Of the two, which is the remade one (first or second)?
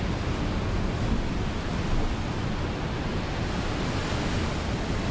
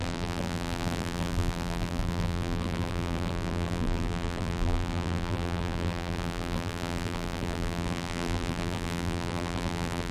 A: second